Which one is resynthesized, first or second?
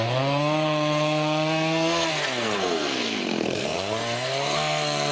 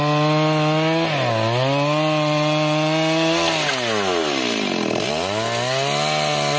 first